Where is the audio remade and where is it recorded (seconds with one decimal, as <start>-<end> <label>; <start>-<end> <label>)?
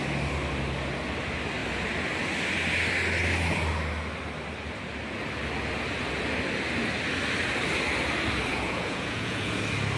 0.0-8.5 recorded; 8.5-9.5 remade; 9.5-10.0 recorded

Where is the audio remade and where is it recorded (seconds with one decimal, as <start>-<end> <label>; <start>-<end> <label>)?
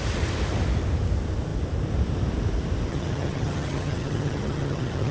0.0-2.9 recorded; 2.9-5.1 remade